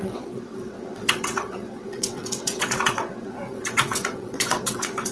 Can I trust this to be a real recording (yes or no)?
no